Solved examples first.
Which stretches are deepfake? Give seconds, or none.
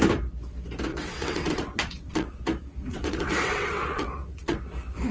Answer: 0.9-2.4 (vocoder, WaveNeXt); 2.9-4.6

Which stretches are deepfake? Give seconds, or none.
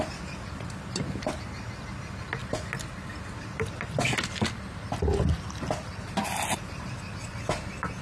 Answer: none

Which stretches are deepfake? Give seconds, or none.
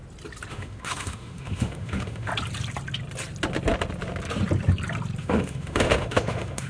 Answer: 0.5-2.3 (autoencoder, DAC-VAE); 5.2-6.7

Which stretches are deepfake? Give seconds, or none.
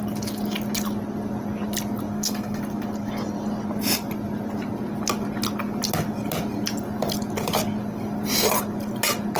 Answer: 2.1-2.6 (codec, SNAC)